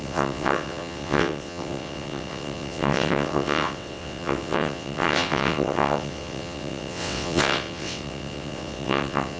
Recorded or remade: remade